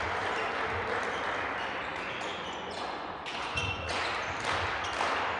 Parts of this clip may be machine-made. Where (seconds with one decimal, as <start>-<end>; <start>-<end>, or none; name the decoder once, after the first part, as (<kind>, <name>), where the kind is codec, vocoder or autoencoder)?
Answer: 1.9-4.0 (vocoder, Vocos)